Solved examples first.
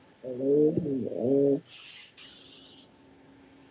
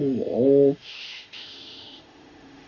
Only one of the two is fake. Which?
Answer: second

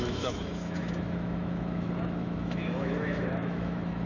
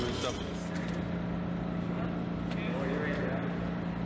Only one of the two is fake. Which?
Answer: first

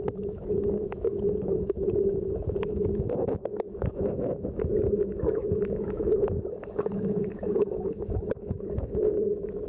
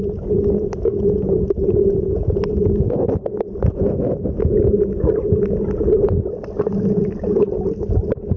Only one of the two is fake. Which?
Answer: first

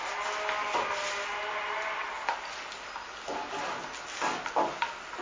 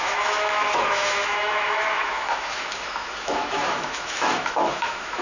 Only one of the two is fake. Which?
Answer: second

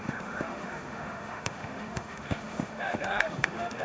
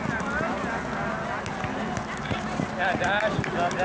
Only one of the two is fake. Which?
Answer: first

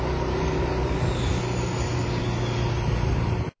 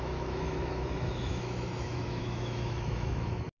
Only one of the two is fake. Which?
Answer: second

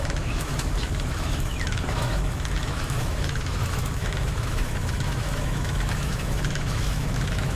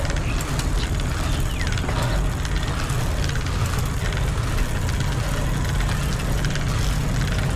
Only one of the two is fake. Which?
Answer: first